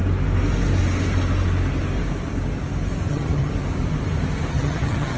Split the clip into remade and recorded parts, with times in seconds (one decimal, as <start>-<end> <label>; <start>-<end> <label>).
0.0-3.1 recorded; 3.1-3.5 remade; 3.5-4.5 recorded; 4.5-5.2 remade